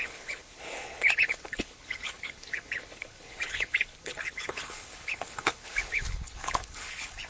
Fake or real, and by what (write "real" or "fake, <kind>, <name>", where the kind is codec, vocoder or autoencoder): fake, codec, HILCodec